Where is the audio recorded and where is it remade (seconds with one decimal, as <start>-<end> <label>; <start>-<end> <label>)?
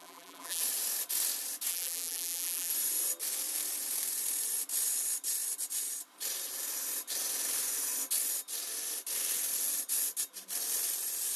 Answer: 0.0-0.6 remade; 0.6-1.7 recorded; 1.7-2.7 remade; 2.7-11.4 recorded